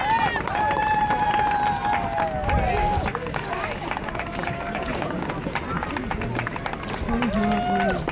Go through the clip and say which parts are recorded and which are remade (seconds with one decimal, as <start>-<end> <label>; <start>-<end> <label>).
0.0-2.8 recorded; 2.8-5.3 remade; 5.3-8.1 recorded